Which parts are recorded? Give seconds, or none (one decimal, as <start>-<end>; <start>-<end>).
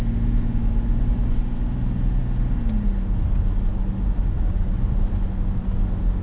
0.0-6.2